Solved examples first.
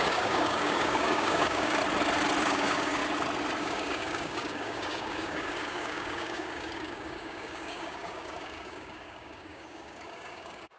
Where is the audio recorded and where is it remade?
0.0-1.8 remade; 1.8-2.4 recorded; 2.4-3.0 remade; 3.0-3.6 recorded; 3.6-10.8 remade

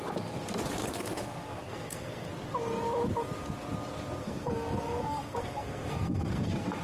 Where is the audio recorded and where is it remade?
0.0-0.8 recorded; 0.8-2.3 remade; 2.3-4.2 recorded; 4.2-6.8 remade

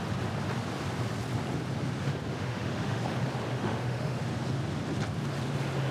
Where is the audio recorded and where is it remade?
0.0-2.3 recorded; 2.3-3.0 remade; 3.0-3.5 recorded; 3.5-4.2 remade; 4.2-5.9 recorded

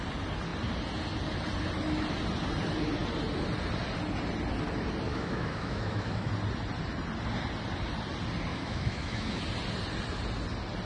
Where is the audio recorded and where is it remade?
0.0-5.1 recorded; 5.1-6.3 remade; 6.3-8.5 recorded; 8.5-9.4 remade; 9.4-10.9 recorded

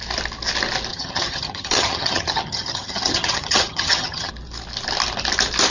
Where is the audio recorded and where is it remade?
0.0-0.9 recorded; 0.9-4.3 remade; 4.3-5.7 recorded